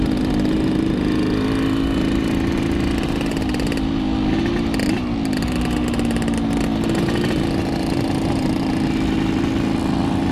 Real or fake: real